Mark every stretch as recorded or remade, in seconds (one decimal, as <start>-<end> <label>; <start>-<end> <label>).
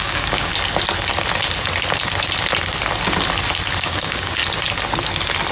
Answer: 0.0-0.5 remade; 0.5-3.8 recorded; 3.8-4.4 remade; 4.4-5.5 recorded